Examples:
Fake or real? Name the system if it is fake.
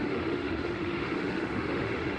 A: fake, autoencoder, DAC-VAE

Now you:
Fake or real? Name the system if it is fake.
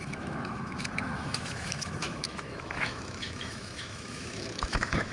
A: fake, autoencoder, DAC-VAE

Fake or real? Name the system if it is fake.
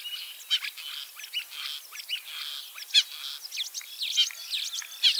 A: real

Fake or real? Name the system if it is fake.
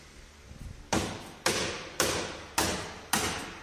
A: real